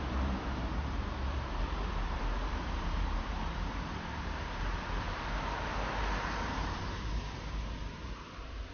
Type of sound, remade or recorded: remade